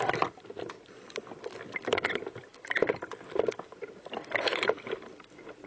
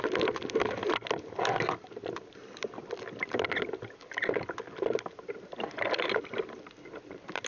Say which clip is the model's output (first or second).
first